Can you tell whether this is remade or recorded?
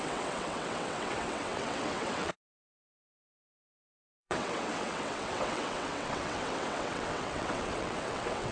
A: remade